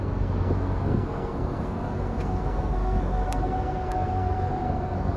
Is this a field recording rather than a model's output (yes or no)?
no